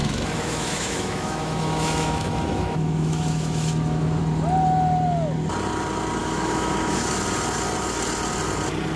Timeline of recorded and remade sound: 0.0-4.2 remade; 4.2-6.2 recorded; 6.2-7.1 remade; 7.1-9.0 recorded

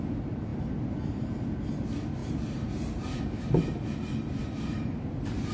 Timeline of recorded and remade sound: 0.0-0.5 recorded; 0.5-1.3 remade; 1.3-2.2 recorded; 2.2-3.2 remade; 3.2-4.4 recorded; 4.4-5.5 remade